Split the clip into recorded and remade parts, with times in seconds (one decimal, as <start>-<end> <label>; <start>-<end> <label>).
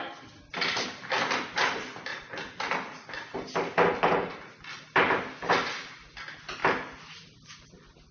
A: 0.0-8.1 recorded